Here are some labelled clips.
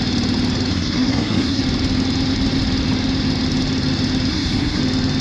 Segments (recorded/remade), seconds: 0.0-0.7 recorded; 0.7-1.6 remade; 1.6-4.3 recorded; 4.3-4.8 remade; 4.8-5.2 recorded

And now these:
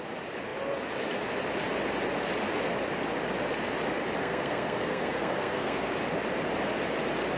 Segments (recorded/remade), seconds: 0.0-4.2 recorded; 4.2-5.9 remade; 5.9-7.4 recorded

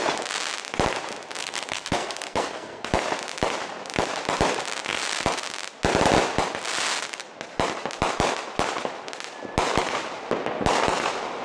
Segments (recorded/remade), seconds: 0.0-1.4 recorded; 1.4-2.9 remade; 2.9-11.4 recorded

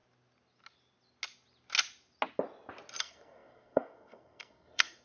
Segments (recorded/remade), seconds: 0.0-3.0 recorded; 3.0-5.0 remade

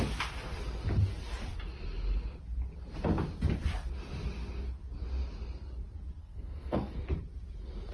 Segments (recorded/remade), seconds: 0.0-6.2 recorded; 6.2-7.0 remade; 7.0-7.9 recorded

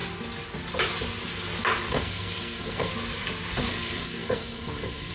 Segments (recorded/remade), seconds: 0.0-1.9 recorded; 1.9-2.9 remade; 2.9-3.7 recorded; 3.7-5.1 remade

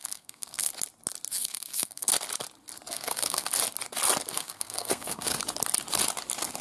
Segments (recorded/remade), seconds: 0.0-0.7 remade; 0.7-1.3 recorded; 1.3-2.1 remade; 2.1-2.9 recorded; 2.9-3.5 remade; 3.5-4.3 recorded; 4.3-5.3 remade; 5.3-6.6 recorded